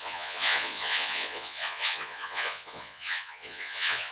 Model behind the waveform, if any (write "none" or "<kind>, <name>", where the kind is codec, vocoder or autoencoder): vocoder, Vocos